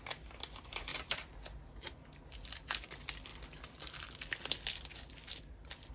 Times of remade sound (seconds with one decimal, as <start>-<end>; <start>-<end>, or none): none

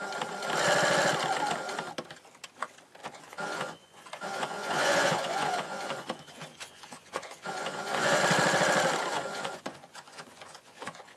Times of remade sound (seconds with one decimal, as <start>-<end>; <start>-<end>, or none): 3.0-8.2; 9.1-11.2

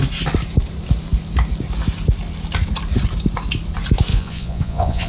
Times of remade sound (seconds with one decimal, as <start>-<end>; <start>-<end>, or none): 4.1-5.1

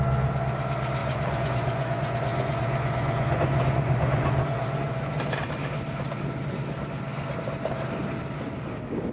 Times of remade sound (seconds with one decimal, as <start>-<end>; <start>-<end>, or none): 1.0-5.1

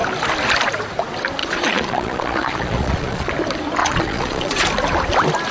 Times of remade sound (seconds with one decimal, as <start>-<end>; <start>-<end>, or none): 1.4-3.3; 3.8-4.6